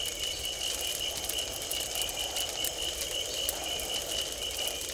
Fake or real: real